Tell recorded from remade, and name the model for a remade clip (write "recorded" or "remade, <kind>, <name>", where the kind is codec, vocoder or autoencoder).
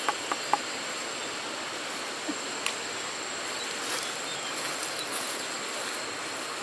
recorded